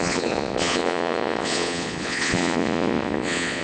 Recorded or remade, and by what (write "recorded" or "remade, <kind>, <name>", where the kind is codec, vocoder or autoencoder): remade, vocoder, Vocos